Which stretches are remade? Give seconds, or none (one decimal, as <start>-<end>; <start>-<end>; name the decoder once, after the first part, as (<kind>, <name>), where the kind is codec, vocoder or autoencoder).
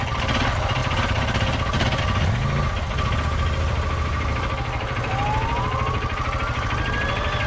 0.8-2.0 (vocoder, BigVGAN v2)